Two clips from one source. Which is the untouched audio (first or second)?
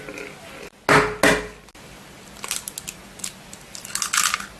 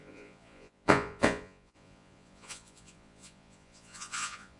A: first